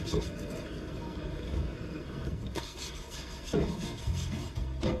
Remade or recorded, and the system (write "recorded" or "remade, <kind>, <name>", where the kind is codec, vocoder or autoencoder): remade, codec, SNAC